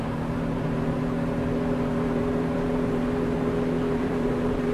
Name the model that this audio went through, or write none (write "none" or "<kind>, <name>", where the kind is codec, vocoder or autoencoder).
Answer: vocoder, BigVGAN v2